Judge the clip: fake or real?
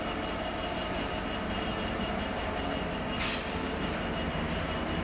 real